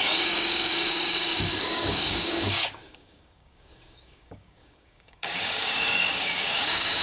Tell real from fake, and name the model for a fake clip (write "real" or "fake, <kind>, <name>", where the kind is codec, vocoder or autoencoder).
fake, codec, DAC